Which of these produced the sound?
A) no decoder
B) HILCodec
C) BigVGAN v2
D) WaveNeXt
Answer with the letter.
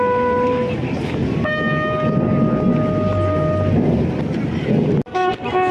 A